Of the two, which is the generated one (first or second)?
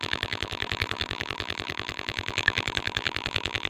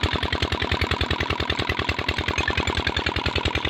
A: first